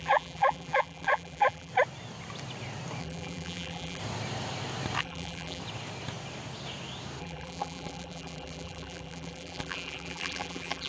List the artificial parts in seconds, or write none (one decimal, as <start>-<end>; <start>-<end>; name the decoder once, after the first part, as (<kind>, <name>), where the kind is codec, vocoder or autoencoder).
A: 0.0-1.7 (vocoder, BigVGAN v2); 3.0-4.0; 5.0-5.6; 7.2-10.9